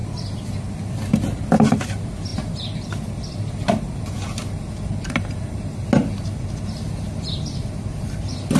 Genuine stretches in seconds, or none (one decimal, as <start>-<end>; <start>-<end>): 0.0-8.6